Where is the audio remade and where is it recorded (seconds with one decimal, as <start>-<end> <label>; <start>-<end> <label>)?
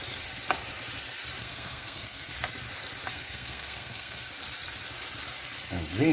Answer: 0.0-1.4 recorded; 1.4-2.3 remade; 2.3-3.1 recorded; 3.1-4.2 remade; 4.2-6.1 recorded